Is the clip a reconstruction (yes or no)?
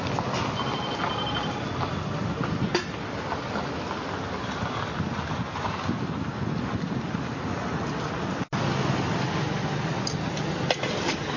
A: no